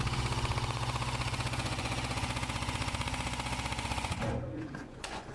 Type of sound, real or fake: fake